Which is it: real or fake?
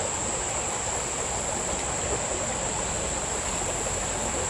real